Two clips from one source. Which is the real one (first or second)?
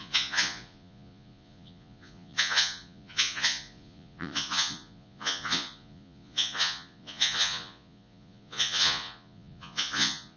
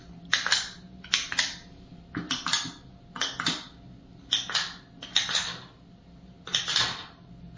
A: second